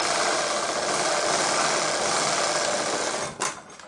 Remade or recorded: recorded